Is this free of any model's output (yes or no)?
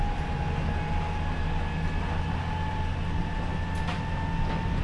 yes